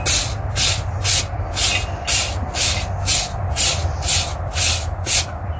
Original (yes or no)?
yes